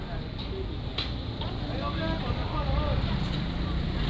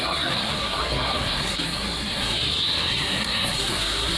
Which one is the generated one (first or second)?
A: second